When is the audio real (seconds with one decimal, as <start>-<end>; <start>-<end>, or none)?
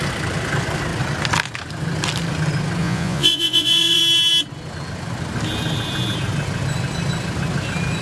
0.0-2.8; 4.0-8.0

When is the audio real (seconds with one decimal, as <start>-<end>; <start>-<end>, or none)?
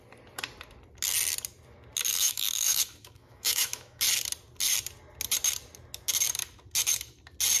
0.0-2.1; 4.0-7.6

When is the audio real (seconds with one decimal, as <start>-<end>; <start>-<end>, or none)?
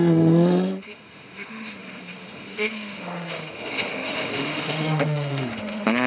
none